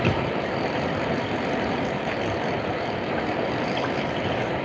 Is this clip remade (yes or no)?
no